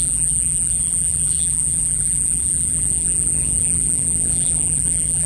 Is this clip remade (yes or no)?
yes